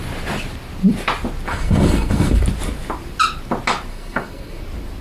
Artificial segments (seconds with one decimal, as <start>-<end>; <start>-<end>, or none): 1.5-2.4; 3.9-4.6